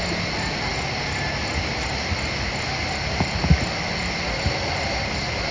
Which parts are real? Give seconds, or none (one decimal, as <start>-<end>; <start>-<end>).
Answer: 0.0-5.5